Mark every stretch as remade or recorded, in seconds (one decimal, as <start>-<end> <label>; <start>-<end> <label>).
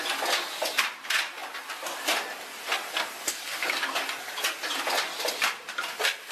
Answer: 0.0-6.3 recorded